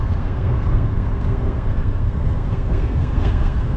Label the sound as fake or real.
fake